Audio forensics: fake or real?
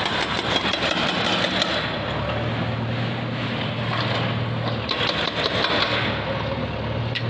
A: real